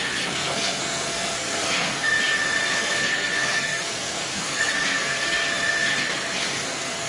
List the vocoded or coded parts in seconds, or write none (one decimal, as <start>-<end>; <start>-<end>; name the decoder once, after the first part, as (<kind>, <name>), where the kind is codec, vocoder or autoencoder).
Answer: 0.0-2.1 (codec, SNAC); 2.7-5.4; 6.0-7.1